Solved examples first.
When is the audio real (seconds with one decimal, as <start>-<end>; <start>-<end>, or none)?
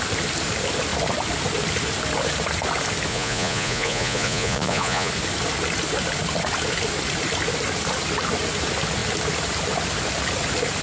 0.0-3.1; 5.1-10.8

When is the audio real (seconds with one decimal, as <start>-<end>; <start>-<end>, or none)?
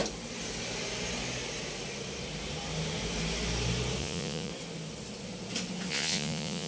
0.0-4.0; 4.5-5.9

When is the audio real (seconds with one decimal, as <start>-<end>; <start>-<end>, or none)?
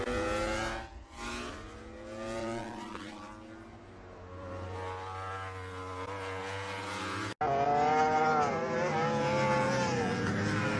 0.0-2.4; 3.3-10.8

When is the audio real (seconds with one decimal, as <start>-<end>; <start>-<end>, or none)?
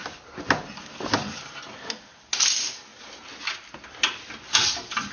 0.0-5.1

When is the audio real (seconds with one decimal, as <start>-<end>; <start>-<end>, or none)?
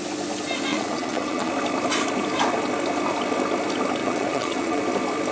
0.0-0.7; 1.5-4.0; 4.8-5.3